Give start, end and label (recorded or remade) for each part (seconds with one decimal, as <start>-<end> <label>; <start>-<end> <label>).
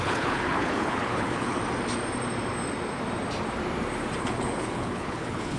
0.0-1.6 remade; 1.6-4.2 recorded; 4.2-5.6 remade